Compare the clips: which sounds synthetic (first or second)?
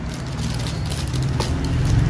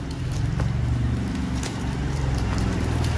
second